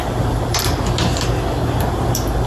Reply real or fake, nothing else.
real